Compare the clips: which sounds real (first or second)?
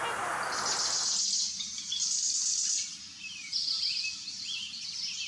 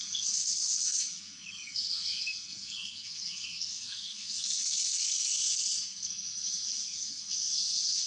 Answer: first